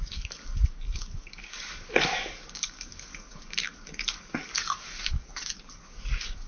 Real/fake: fake